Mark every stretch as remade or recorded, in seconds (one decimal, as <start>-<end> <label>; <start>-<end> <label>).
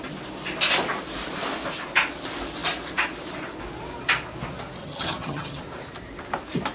0.0-4.8 recorded; 4.8-5.6 remade; 5.6-6.7 recorded